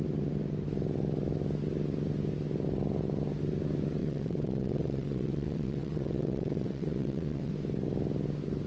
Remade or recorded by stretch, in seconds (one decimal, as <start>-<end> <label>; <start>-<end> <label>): 0.0-4.0 recorded; 4.0-7.5 remade; 7.5-8.7 recorded